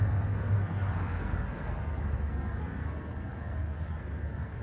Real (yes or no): no